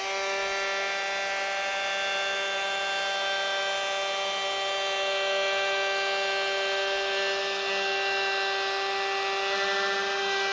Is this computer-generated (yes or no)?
no